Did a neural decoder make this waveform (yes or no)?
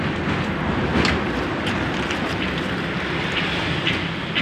yes